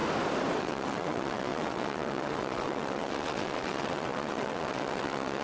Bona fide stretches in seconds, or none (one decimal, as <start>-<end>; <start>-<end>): 0.0-0.6